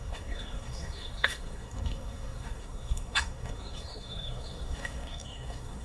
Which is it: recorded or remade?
remade